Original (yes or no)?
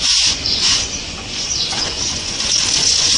no